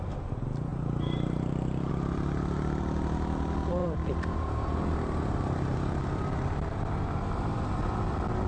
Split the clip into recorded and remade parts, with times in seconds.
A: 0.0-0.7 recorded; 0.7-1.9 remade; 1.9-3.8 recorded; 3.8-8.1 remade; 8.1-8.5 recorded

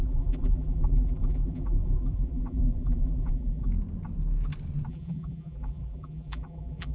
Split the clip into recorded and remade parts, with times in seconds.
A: 0.0-3.7 remade; 3.7-4.9 recorded; 4.9-6.9 remade

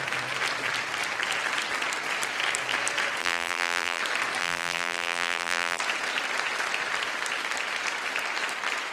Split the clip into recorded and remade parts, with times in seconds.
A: 0.0-3.2 recorded; 3.2-4.0 remade; 4.0-4.4 recorded; 4.4-5.8 remade; 5.8-8.9 recorded